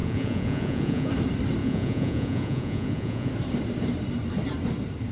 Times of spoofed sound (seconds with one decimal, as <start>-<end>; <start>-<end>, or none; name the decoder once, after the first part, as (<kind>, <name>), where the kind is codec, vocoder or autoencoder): 0.0-1.1 (vocoder, Vocos); 1.6-3.3